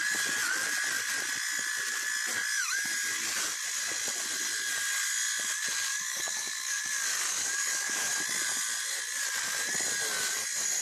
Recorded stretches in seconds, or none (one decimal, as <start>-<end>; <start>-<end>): 0.0-5.9; 6.8-7.3; 8.1-10.8